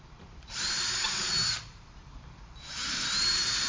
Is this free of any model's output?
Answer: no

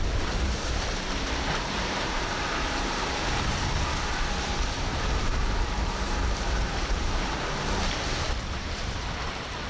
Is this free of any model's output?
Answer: no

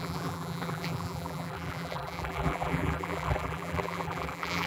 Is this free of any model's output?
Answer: no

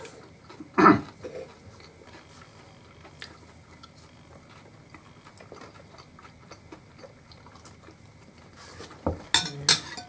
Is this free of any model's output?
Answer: yes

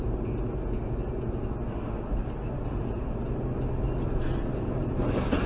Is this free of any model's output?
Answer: yes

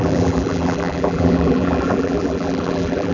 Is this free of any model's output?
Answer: no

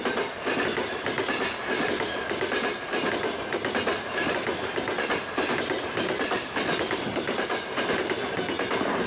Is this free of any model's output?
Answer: no